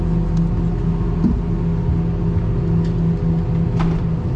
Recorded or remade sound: recorded